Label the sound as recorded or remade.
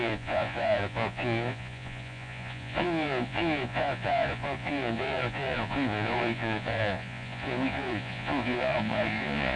remade